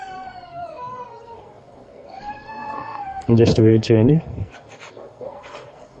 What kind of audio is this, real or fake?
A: fake